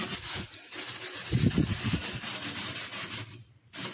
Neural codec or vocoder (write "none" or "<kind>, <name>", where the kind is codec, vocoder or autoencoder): none